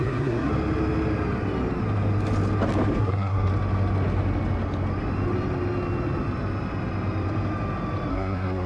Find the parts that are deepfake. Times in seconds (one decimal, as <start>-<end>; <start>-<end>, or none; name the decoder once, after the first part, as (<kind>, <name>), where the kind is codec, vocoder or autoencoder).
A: 0.0-0.5 (codec, SNAC); 3.0-3.5; 8.1-8.7

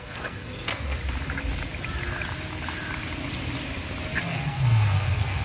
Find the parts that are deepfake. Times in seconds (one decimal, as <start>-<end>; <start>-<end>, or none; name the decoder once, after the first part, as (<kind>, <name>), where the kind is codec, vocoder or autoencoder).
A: 0.0-1.0 (codec, SNAC); 4.2-5.4

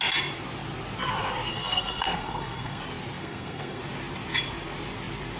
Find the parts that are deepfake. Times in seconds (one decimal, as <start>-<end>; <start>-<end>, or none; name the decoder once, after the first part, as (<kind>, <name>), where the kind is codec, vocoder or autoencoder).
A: 1.5-2.8 (codec, SNAC); 3.2-3.8

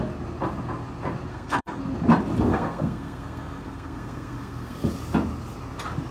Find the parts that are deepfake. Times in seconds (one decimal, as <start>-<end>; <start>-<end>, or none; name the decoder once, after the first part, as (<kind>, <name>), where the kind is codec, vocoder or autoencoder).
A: 1.3-1.8 (codec, SNAC); 2.5-4.9

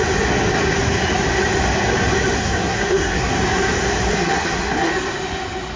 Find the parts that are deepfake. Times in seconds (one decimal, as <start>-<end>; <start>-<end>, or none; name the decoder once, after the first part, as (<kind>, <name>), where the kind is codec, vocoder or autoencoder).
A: 2.4-3.3 (codec, SNAC); 4.1-4.9

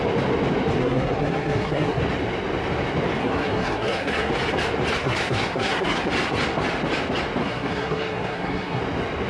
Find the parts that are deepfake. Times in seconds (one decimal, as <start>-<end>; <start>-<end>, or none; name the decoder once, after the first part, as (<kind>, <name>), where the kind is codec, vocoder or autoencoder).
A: 0.8-2.0 (codec, SNAC); 3.2-4.3; 5.0-6.1; 7.4-8.8

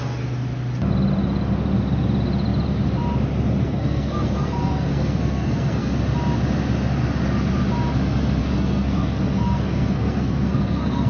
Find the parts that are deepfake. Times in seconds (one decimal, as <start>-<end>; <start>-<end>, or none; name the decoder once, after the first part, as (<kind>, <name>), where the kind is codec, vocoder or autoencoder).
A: 3.6-5.9 (codec, SNAC); 8.4-11.1

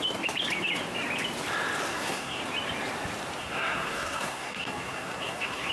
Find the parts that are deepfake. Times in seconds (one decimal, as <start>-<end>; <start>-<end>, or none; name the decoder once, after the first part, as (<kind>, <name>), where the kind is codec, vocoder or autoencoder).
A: 1.9-2.4 (codec, SNAC); 3.4-5.7